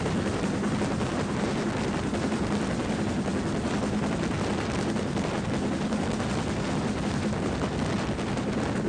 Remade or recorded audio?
recorded